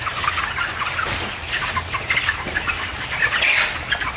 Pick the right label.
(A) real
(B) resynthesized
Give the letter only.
A